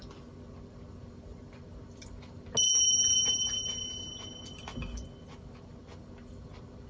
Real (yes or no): yes